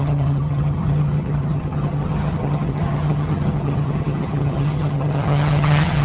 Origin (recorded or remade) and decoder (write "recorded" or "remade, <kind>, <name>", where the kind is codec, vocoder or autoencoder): remade, vocoder, HiFi-GAN